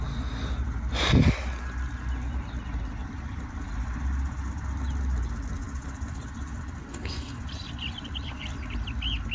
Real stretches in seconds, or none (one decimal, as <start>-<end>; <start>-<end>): 0.0-6.8; 7.4-9.3